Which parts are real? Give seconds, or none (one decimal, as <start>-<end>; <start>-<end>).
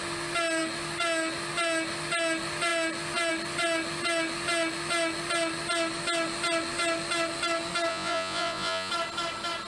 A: 0.0-7.9; 8.9-9.7